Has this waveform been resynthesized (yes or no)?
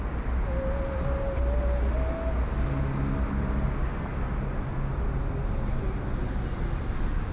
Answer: no